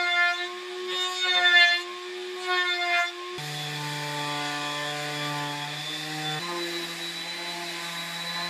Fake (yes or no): no